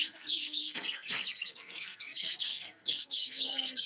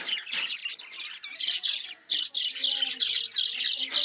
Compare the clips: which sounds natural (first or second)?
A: second